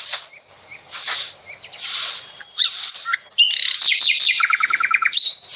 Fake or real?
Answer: real